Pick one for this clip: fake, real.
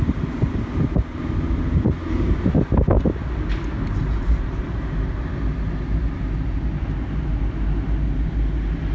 real